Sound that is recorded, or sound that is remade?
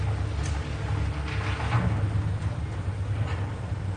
recorded